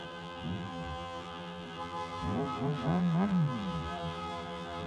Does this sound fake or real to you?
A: fake